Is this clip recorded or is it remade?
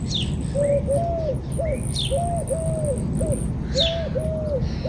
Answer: recorded